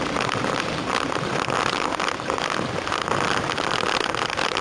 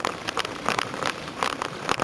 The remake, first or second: second